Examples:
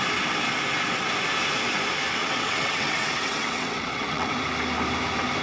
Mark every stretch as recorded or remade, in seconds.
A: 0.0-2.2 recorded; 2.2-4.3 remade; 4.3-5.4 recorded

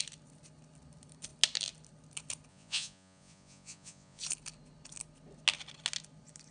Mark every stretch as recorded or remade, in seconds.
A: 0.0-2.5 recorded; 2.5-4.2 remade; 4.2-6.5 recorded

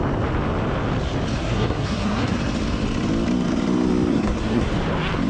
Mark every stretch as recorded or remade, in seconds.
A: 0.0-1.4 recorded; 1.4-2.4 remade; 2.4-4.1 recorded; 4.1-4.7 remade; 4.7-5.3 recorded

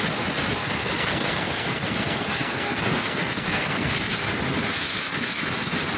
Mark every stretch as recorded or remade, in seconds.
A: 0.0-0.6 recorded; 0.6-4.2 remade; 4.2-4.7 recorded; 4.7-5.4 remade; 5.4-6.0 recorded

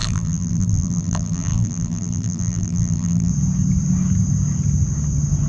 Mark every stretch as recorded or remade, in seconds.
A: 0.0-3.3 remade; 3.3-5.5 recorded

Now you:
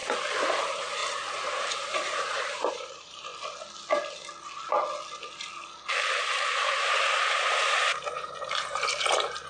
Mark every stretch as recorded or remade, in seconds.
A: 0.0-0.6 recorded; 0.6-3.3 remade; 3.3-6.1 recorded; 6.1-9.5 remade